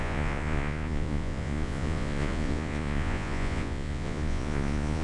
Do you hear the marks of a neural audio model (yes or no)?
yes